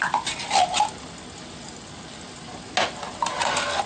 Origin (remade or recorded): recorded